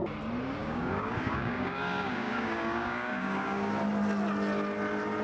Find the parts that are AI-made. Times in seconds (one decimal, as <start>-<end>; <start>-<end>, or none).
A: 0.6-3.7